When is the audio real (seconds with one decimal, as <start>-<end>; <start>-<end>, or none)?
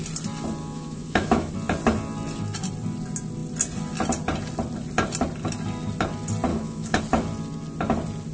0.0-0.6; 1.5-6.5; 7.0-8.3